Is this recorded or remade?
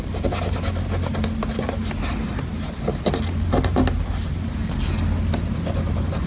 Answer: recorded